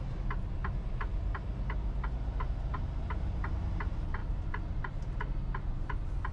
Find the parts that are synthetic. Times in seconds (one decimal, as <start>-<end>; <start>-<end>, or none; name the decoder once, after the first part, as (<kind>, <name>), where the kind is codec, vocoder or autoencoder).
none